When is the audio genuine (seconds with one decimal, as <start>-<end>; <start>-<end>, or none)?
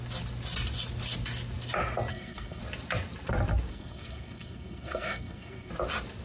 0.0-2.1; 2.6-3.7; 5.7-6.2